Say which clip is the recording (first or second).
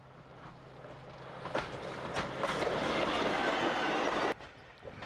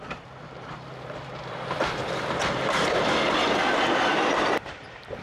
first